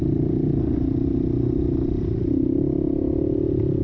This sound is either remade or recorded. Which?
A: recorded